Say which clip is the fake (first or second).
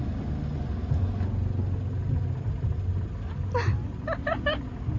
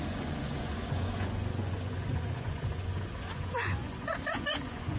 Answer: second